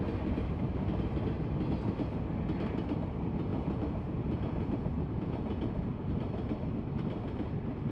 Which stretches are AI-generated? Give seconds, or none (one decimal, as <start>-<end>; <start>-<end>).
3.5-6.1